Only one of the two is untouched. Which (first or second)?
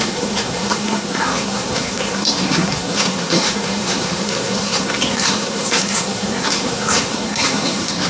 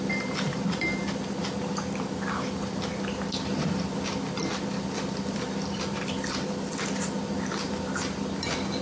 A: second